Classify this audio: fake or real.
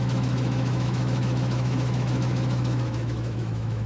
fake